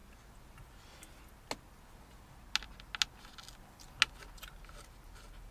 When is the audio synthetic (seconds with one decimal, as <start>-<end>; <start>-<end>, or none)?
none